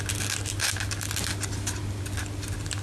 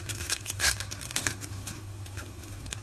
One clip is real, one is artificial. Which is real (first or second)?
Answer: first